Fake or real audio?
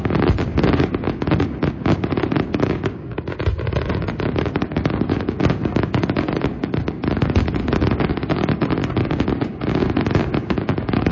fake